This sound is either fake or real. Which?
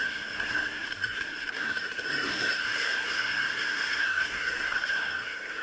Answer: fake